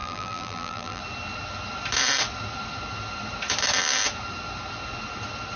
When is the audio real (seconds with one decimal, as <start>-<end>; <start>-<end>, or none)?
1.0-5.6